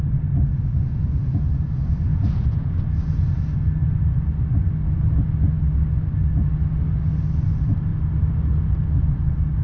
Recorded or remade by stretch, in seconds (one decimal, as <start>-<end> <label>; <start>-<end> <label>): 0.0-0.5 recorded; 0.5-1.7 remade; 1.7-2.1 recorded; 2.1-2.8 remade; 2.8-9.6 recorded